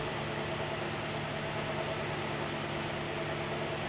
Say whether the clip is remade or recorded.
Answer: recorded